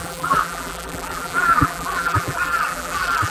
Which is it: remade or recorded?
remade